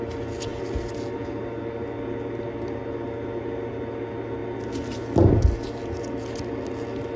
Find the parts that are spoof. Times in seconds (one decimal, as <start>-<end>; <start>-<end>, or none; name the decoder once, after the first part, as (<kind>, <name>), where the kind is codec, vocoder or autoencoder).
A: none